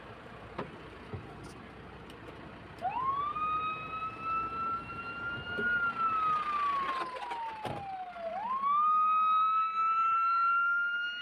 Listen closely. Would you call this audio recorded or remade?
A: recorded